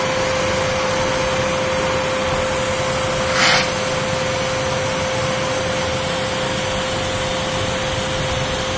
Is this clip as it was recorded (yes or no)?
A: yes